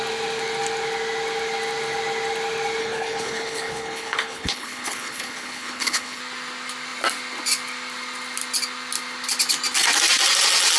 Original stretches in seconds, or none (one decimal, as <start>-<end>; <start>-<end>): 0.0-2.8; 6.2-10.8